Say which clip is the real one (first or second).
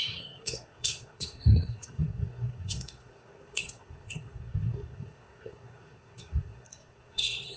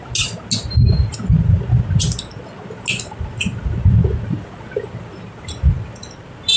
second